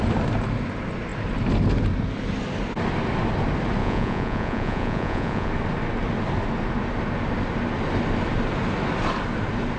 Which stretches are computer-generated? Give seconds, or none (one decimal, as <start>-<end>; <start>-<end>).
3.8-5.5

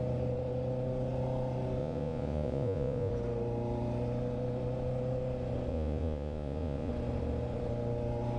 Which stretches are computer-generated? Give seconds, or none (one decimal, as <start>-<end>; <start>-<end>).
1.8-3.1; 5.7-6.9

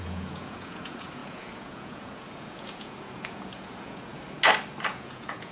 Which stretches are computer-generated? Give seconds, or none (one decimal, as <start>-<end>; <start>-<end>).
0.0-4.2; 4.9-5.5

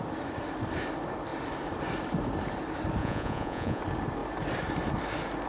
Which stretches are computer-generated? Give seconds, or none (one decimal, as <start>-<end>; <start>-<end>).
3.0-3.8